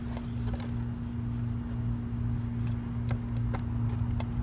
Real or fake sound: real